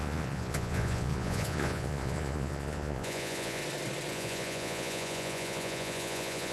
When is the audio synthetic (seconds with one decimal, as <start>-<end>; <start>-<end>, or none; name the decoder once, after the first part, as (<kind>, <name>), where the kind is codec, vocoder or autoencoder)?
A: 0.0-3.6 (vocoder, Vocos); 4.1-6.5